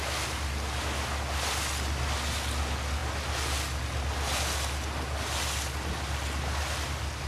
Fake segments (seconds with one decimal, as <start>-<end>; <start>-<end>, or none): none